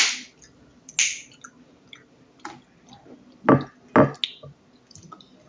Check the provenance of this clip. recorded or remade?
recorded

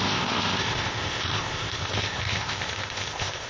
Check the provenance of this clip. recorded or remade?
remade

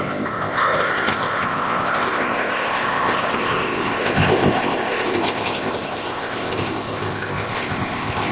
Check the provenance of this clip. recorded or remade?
remade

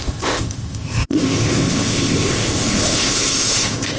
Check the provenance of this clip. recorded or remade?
remade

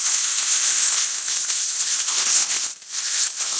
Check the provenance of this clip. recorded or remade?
remade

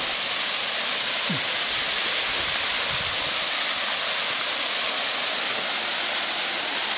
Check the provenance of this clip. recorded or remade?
recorded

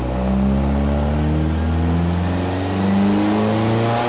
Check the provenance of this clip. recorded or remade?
recorded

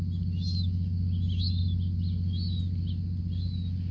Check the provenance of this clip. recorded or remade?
recorded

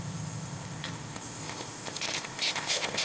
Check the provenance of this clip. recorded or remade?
remade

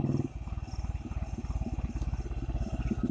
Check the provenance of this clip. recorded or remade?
recorded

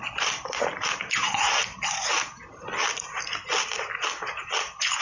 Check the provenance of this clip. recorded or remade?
recorded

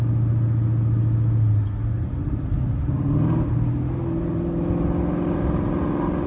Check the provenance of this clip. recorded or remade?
recorded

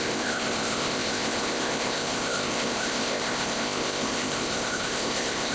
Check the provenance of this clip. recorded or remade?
remade